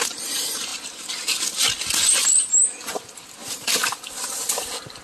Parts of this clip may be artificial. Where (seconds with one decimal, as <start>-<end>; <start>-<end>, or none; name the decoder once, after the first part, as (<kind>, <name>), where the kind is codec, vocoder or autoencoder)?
none